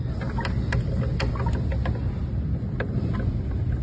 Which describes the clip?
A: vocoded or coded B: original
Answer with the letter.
B